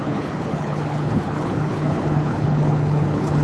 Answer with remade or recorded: remade